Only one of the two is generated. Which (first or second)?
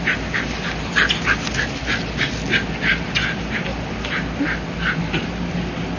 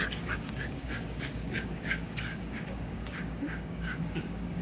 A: second